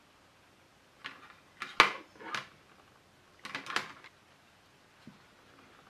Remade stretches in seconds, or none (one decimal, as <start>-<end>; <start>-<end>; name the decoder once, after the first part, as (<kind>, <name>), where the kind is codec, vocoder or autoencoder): none